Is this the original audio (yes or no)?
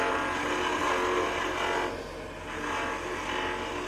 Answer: yes